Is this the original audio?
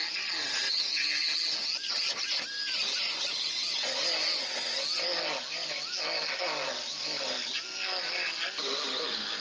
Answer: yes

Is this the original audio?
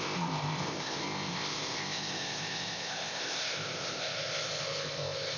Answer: no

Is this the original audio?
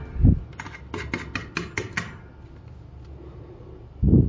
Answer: yes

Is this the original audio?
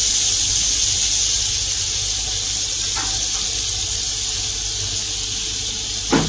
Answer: yes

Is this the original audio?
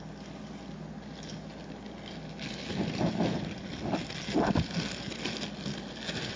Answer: yes